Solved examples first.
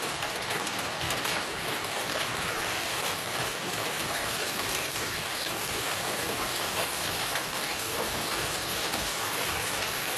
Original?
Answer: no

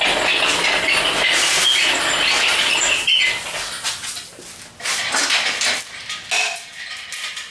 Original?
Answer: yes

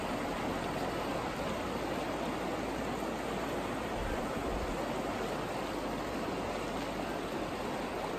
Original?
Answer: yes